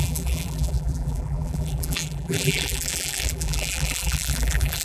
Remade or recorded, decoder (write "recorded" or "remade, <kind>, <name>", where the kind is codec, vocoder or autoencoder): remade, vocoder, BigVGAN v2